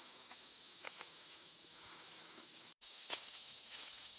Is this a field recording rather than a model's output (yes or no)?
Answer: no